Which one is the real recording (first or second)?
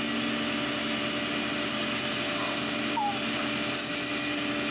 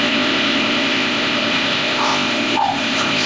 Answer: first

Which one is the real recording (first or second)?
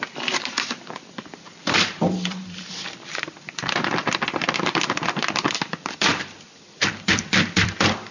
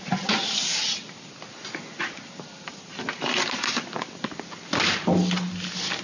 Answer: second